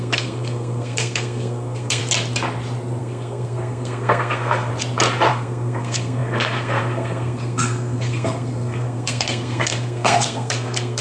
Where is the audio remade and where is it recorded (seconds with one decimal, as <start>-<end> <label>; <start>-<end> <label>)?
0.0-2.0 remade; 2.0-3.0 recorded; 3.0-4.7 remade; 4.7-5.3 recorded; 5.3-11.0 remade